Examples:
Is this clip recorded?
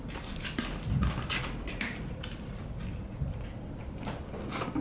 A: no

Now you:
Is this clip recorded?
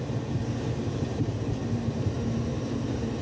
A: no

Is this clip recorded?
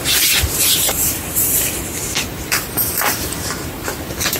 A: no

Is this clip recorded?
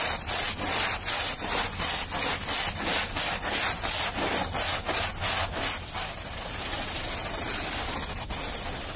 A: yes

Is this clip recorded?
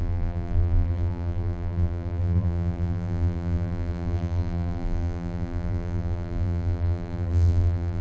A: no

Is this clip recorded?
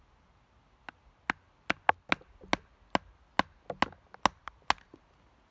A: yes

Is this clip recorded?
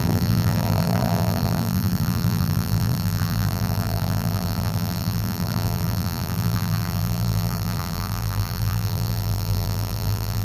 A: no